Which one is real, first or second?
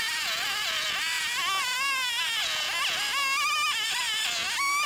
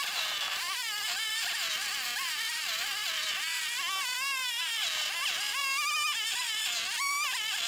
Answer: first